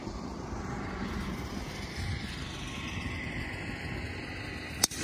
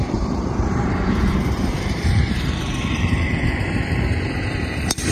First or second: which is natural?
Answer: first